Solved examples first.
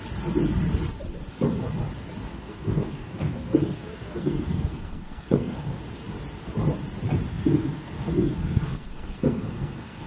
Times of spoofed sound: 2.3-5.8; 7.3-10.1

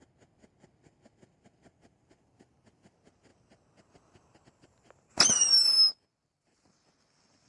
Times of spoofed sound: none

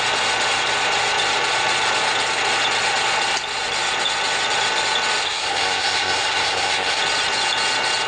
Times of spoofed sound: 5.2-7.0

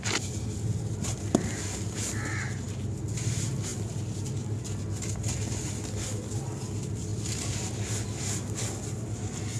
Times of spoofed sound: none

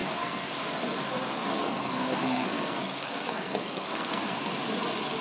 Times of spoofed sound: 0.0-0.5; 1.4-4.5

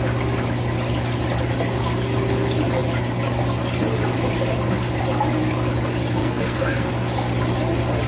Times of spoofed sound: 6.2-6.9

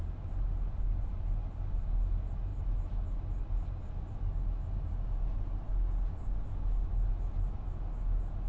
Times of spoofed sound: none